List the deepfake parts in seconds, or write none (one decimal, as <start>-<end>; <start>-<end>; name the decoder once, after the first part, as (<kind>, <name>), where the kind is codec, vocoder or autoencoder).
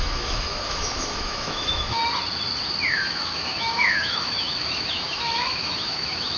0.0-2.0 (autoencoder, DAC-VAE); 2.9-6.4